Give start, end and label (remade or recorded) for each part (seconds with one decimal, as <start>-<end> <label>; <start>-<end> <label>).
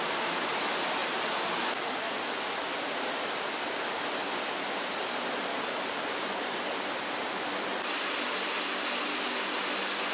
0.0-10.1 recorded